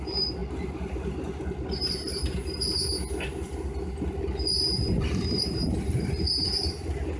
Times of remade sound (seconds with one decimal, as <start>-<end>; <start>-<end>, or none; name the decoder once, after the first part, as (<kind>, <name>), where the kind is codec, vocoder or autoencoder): 0.0-0.4 (vocoder, BigVGAN v2); 4.2-7.2